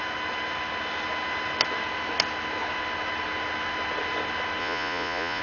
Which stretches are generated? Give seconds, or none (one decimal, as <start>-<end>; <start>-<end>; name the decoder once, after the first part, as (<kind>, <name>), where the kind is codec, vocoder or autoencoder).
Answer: 4.6-5.4 (vocoder, Vocos)